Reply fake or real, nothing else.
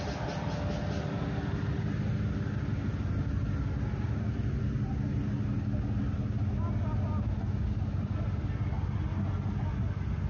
real